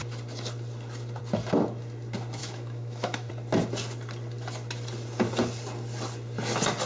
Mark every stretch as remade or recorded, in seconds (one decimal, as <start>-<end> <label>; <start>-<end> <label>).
0.0-2.4 recorded; 2.4-3.3 remade; 3.3-6.9 recorded

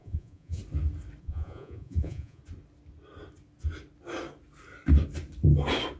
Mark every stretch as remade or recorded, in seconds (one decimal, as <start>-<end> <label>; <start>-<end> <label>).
0.0-0.6 remade; 0.6-1.2 recorded; 1.2-2.4 remade; 2.4-6.0 recorded

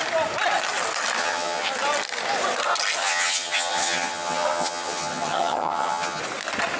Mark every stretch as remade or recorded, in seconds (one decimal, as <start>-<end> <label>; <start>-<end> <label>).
0.0-1.2 recorded; 1.2-1.7 remade; 1.7-3.0 recorded; 3.0-6.2 remade; 6.2-6.8 recorded

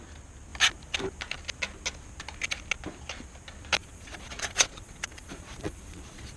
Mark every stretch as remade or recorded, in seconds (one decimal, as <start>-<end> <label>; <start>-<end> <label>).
0.0-3.8 recorded; 3.8-6.4 remade

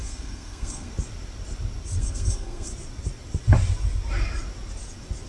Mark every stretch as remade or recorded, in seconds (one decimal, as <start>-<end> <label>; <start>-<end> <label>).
0.0-0.9 remade; 0.9-2.0 recorded; 2.0-2.7 remade; 2.7-5.3 recorded

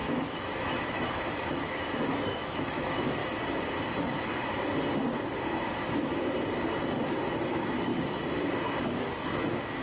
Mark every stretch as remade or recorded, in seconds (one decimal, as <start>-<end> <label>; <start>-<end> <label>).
0.0-3.2 remade; 3.2-7.5 recorded; 7.5-7.9 remade; 7.9-8.8 recorded; 8.8-9.8 remade